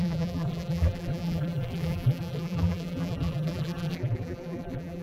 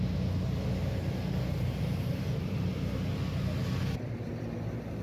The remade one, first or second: first